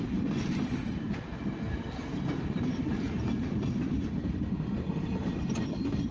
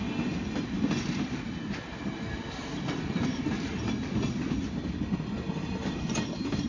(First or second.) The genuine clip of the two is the second